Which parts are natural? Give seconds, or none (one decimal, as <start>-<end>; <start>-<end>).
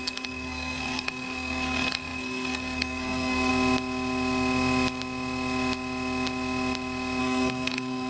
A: 3.5-7.2